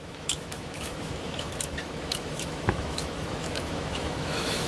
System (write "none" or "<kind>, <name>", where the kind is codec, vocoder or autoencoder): autoencoder, DAC-VAE